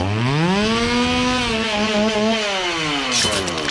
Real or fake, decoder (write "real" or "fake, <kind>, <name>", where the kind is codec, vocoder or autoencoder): real